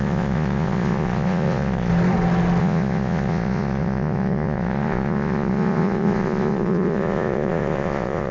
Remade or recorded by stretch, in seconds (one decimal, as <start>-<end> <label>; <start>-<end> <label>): 0.0-1.9 remade; 1.9-2.6 recorded; 2.6-8.3 remade